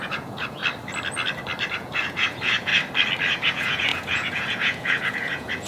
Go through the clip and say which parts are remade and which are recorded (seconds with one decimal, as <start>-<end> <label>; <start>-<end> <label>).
0.0-0.6 remade; 0.6-1.7 recorded; 1.7-2.7 remade; 2.7-3.3 recorded; 3.3-5.7 remade